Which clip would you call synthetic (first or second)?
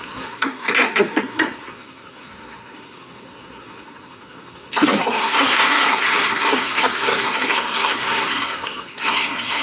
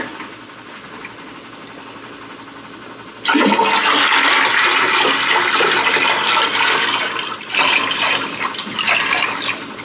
first